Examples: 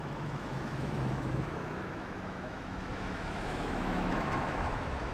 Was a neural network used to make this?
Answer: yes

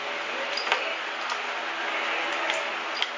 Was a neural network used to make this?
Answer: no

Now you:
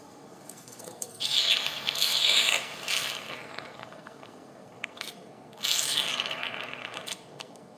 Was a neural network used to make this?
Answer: yes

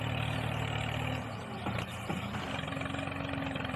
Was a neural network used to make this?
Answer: no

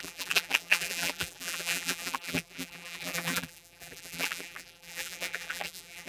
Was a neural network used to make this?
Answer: yes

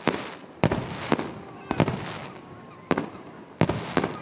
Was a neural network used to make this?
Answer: no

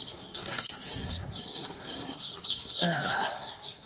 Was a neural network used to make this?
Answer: yes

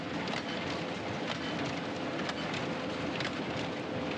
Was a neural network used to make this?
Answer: no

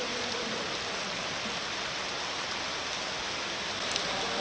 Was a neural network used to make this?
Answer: no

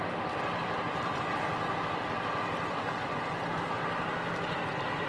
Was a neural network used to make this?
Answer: no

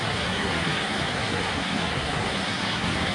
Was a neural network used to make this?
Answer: yes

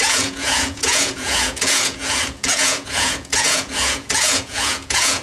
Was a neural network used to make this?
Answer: yes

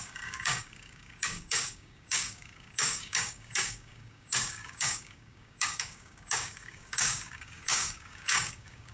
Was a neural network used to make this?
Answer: yes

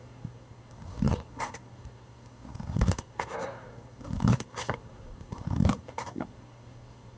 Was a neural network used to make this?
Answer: yes